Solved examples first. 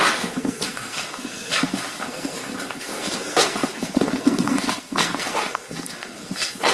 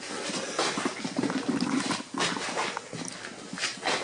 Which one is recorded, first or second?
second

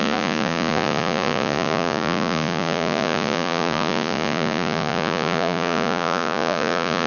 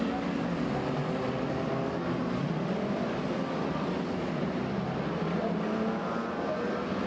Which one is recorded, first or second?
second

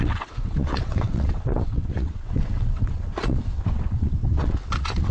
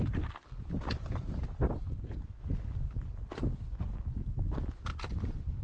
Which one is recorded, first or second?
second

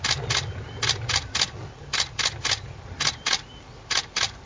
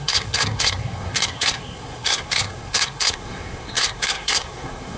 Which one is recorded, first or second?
first